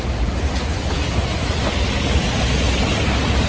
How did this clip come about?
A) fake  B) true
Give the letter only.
B